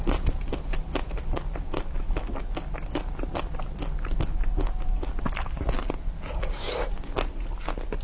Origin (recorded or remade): recorded